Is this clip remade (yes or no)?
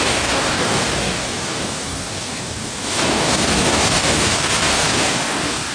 yes